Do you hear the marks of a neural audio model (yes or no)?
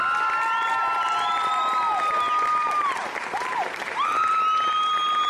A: no